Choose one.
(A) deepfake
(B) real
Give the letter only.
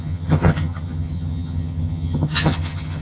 A